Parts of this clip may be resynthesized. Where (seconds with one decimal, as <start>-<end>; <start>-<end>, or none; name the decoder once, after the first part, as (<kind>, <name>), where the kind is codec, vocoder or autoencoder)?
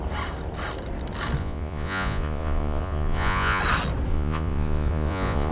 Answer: 1.4-3.6 (vocoder, Vocos); 4.1-5.5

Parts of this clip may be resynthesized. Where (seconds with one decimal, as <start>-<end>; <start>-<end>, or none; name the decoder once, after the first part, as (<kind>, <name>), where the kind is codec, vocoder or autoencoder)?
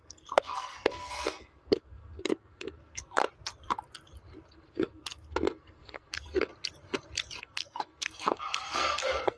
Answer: 0.0-3.2 (codec, SNAC); 4.5-6.5; 7.4-9.4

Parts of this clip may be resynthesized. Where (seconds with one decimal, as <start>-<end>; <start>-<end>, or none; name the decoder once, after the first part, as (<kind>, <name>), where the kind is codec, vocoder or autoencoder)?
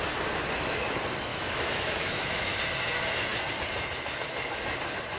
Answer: 1.3-2.6 (autoencoder, DAC-VAE)